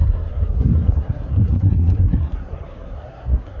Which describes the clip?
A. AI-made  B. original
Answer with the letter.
A